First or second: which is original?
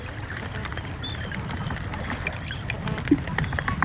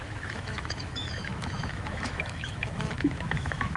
first